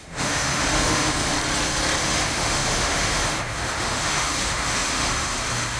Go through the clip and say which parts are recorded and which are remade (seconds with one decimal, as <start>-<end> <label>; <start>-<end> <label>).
0.0-1.3 remade; 1.3-2.0 recorded; 2.0-5.8 remade